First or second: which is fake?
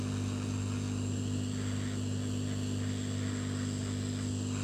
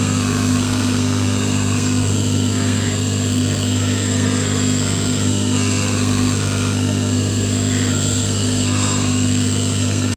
second